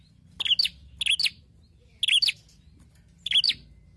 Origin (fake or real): real